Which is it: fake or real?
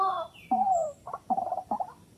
fake